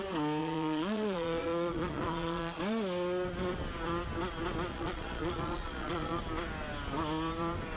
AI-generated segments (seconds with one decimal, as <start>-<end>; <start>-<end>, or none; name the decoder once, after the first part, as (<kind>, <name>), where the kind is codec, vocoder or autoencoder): 0.4-2.6 (vocoder, Vocos); 4.7-6.2